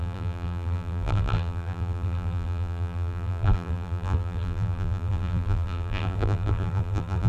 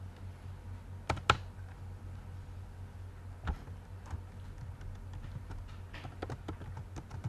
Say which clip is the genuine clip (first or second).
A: second